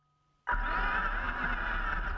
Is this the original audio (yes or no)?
yes